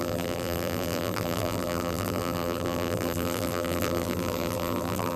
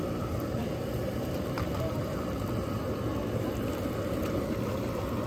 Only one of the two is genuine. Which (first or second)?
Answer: second